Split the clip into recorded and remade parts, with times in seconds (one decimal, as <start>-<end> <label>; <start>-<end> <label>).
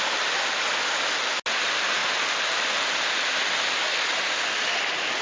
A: 0.0-5.2 recorded